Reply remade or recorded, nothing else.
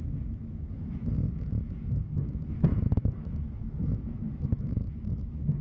remade